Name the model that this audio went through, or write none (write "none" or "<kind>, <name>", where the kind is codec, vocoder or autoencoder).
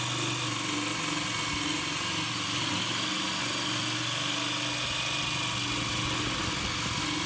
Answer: none